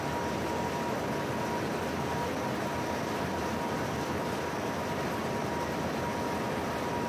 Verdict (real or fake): real